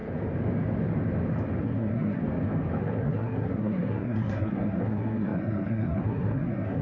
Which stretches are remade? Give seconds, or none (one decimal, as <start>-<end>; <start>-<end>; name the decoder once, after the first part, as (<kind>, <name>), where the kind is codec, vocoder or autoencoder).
1.6-2.2 (codec, SNAC); 2.8-6.8